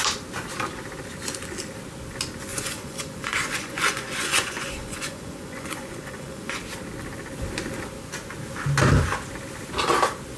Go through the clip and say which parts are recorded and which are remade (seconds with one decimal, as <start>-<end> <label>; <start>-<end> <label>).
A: 0.0-2.5 recorded; 2.5-6.6 remade; 6.6-10.4 recorded